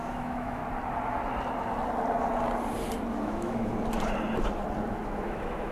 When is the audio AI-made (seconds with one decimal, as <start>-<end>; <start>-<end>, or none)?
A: 0.0-0.6; 3.2-3.7; 4.9-5.7